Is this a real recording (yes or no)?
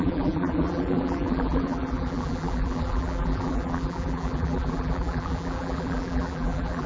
no